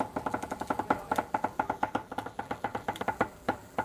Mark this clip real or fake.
fake